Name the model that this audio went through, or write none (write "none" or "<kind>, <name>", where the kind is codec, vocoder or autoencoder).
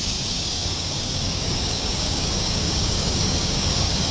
codec, DAC